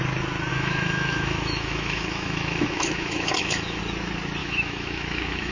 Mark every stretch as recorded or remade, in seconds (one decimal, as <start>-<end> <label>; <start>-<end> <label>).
0.0-0.5 recorded; 0.5-3.8 remade; 3.8-4.4 recorded; 4.4-5.5 remade